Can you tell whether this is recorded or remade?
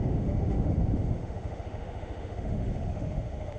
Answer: remade